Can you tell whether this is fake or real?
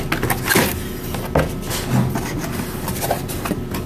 real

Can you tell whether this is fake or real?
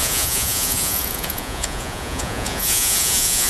fake